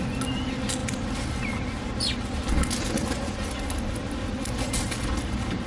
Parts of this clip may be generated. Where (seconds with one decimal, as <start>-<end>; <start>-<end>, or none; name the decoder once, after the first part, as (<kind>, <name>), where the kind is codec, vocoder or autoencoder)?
none